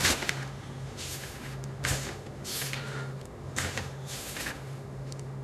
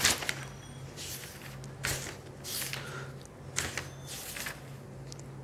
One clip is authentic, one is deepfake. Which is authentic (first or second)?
second